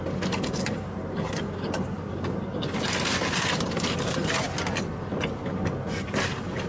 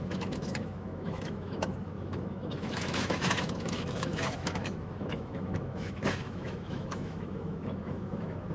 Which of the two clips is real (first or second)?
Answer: first